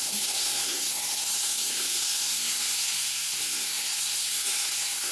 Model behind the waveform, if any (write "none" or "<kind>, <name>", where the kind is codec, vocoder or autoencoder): codec, SNAC